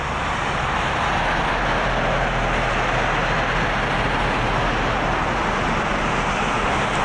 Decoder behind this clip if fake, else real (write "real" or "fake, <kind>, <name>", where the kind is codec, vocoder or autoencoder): real